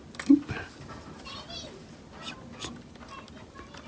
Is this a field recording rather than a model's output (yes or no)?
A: yes